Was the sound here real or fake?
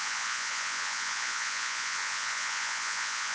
fake